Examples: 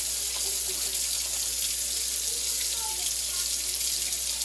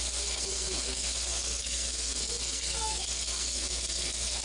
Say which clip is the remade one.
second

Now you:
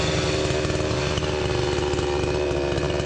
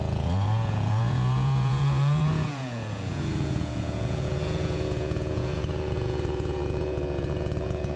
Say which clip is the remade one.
second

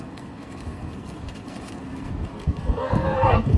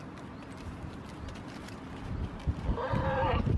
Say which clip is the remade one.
first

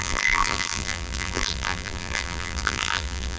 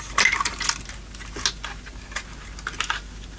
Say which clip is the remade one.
first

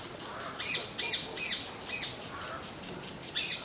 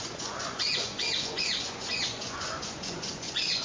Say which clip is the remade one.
second